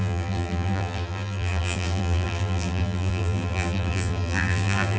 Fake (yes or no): yes